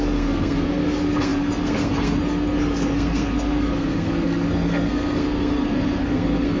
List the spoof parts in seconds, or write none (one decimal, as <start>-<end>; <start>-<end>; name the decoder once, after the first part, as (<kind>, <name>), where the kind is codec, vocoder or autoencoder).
0.0-6.6 (codec, SNAC)